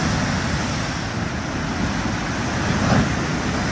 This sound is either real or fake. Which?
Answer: real